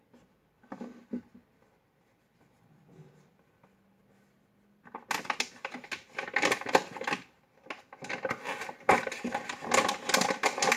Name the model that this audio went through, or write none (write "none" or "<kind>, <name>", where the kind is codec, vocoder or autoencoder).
none